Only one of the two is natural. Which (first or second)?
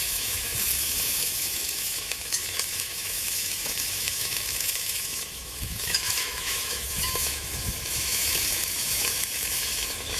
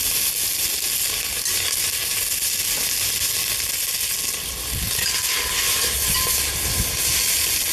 second